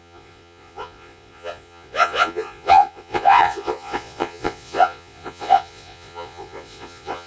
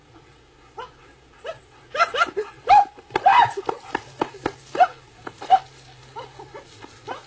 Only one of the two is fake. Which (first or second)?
first